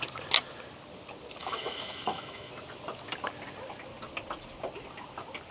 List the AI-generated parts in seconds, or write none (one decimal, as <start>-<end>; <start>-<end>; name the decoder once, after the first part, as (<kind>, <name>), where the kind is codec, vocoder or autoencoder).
1.4-2.5 (autoencoder, DAC-VAE)

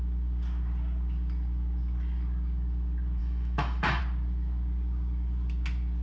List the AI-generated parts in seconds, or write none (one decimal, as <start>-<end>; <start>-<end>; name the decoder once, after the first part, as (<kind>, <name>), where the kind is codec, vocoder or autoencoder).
3.2-4.0 (autoencoder, DAC-VAE)

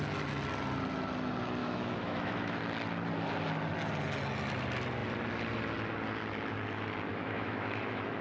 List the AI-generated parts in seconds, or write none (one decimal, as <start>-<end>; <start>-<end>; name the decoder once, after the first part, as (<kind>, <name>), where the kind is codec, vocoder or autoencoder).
1.6-2.6 (autoencoder, DAC-VAE); 7.1-8.2

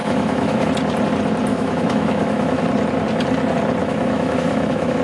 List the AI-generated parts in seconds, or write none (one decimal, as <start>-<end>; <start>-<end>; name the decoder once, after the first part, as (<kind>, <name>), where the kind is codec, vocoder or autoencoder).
0.0-0.7 (autoencoder, DAC-VAE); 1.5-2.6; 3.8-5.0

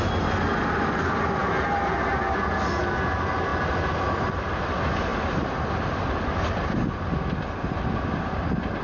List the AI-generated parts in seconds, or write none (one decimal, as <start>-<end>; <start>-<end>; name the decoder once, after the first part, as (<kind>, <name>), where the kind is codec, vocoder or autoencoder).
none

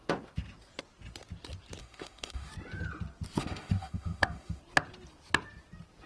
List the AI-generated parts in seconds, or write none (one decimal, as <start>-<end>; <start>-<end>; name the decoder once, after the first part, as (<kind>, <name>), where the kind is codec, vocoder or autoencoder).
1.8-2.5 (autoencoder, DAC-VAE); 3.4-4.6

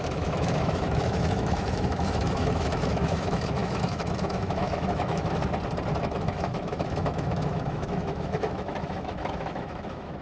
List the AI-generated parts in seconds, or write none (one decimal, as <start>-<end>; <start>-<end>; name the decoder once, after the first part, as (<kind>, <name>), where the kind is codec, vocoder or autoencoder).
0.0-5.4 (autoencoder, DAC-VAE); 6.0-10.2